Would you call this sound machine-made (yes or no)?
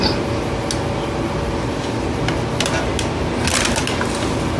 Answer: no